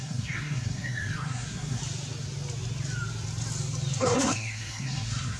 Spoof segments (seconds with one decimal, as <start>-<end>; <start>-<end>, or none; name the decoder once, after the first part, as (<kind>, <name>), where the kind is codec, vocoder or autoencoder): 0.0-1.8 (codec, SNAC); 4.0-5.4